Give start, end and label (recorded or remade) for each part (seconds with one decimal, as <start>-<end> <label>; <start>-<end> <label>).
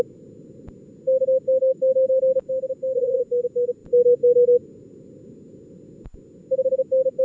0.0-1.6 recorded; 1.6-2.2 remade; 2.2-7.2 recorded